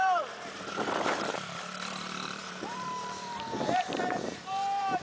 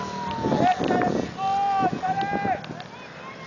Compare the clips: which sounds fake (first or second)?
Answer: first